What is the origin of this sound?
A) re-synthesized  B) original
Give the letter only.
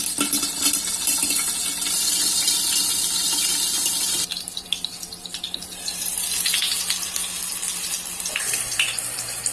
B